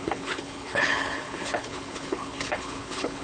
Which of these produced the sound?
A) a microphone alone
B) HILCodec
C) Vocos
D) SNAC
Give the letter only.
B